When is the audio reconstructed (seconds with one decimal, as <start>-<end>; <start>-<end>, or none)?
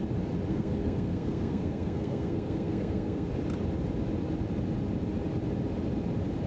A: 0.5-3.3